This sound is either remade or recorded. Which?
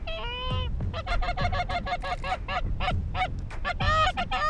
recorded